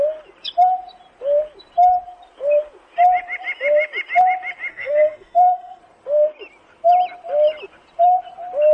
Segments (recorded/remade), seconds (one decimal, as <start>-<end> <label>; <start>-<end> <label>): 0.0-4.7 recorded; 4.7-5.8 remade; 5.8-8.7 recorded